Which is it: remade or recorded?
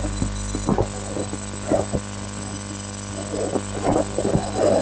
recorded